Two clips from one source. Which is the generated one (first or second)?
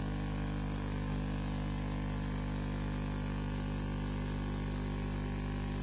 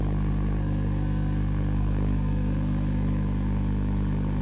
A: second